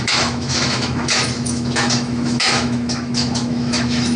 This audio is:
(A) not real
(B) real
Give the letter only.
A